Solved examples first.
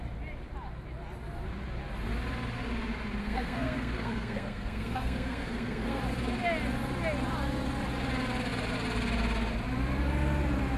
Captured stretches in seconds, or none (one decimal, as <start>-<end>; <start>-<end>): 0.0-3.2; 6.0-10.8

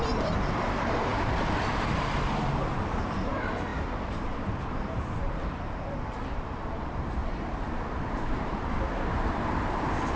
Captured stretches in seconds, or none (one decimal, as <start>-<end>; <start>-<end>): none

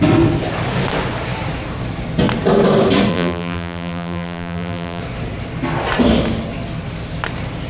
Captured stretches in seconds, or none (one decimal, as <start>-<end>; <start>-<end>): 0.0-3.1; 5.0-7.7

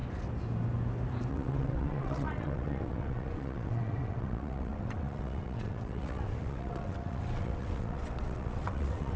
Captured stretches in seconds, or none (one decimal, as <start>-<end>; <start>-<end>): 0.0-1.3

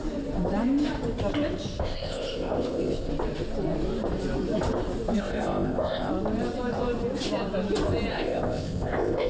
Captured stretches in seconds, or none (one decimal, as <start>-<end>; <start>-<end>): 0.0-1.8; 3.1-5.2; 6.1-8.1

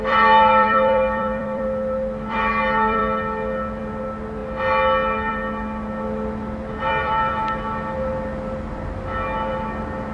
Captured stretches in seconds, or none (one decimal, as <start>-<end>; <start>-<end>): 3.0-3.8; 4.4-5.3

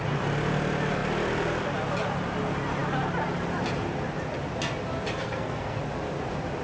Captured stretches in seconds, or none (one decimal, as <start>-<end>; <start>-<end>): 0.0-5.2; 5.8-6.6